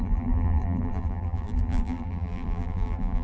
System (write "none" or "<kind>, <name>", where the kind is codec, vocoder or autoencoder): vocoder, BigVGAN v2